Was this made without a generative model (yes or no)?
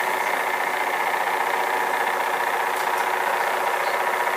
yes